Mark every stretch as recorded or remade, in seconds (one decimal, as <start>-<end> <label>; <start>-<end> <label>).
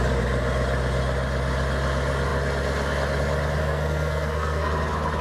0.0-3.6 recorded; 3.6-4.7 remade; 4.7-5.2 recorded